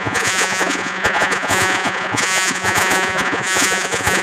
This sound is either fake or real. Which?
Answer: fake